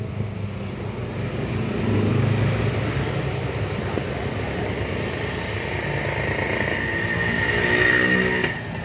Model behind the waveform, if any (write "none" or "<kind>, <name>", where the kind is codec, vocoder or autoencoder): none